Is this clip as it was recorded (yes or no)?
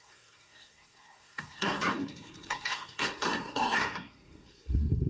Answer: no